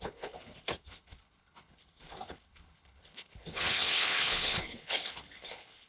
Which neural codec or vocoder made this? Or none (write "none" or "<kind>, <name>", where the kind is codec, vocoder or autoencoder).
codec, HILCodec